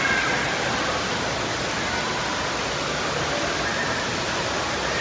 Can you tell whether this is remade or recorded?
recorded